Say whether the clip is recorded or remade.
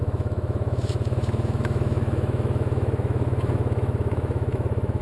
remade